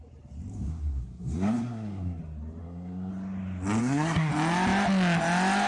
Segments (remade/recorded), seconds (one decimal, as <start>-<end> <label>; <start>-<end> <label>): 0.0-0.5 recorded; 0.5-2.2 remade; 2.2-2.6 recorded; 2.6-3.1 remade; 3.1-3.8 recorded; 3.8-4.3 remade; 4.3-5.7 recorded